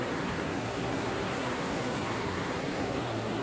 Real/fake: fake